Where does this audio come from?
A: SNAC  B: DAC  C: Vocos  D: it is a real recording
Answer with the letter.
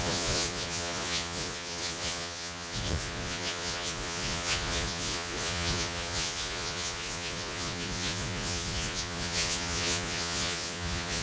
C